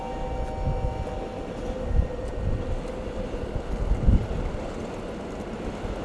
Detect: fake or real real